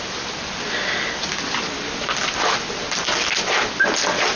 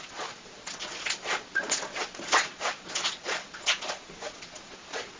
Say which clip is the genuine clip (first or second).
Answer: first